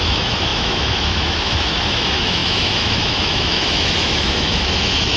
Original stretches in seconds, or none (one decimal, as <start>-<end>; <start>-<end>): none